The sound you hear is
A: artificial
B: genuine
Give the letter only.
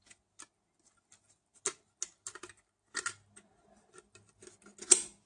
B